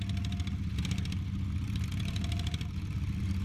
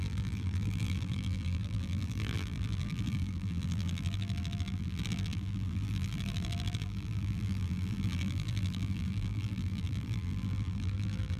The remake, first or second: second